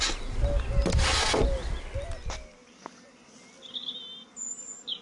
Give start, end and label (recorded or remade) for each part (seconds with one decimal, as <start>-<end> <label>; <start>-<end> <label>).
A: 0.0-5.0 recorded